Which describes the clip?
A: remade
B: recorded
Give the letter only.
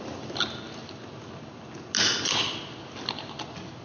B